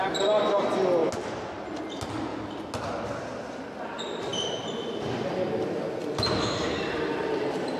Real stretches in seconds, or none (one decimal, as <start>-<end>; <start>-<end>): 0.0-6.0